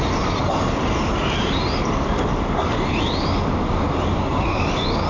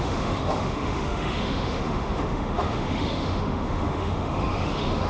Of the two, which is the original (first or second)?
first